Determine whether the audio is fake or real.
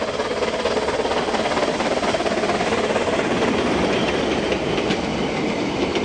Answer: real